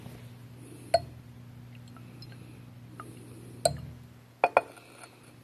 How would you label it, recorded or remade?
recorded